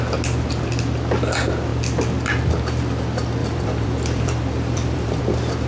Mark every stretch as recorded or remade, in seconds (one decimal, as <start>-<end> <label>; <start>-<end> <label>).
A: 0.0-3.4 recorded; 3.4-5.2 remade; 5.2-5.7 recorded